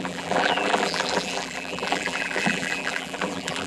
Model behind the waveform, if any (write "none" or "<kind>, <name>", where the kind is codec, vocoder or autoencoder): vocoder, BigVGAN v2